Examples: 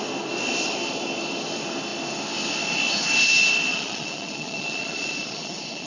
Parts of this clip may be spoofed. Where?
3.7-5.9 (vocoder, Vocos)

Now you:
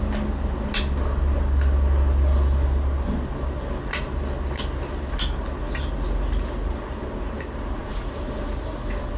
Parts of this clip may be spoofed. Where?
none

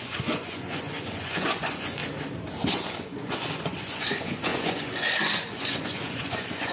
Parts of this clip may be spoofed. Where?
0.0-2.0 (vocoder, Vocos); 2.7-6.7

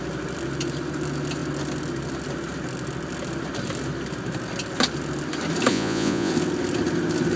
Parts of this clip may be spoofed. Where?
5.7-6.3 (vocoder, Vocos)

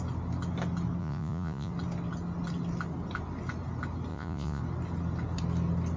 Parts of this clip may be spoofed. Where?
1.0-1.7 (vocoder, Vocos); 4.1-4.6